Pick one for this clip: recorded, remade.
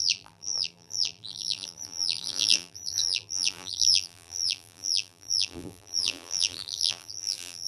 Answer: remade